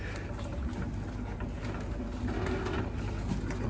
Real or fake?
real